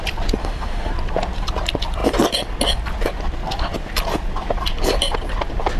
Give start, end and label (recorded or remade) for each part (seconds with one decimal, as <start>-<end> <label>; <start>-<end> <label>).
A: 0.0-0.4 recorded; 0.4-0.9 remade; 0.9-5.8 recorded